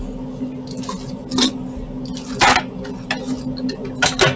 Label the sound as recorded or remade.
recorded